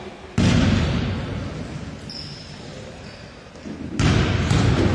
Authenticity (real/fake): real